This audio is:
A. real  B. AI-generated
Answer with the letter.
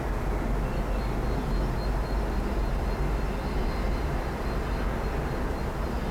A